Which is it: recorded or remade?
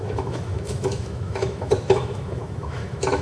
remade